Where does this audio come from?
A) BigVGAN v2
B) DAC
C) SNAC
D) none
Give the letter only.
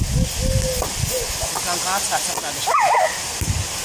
D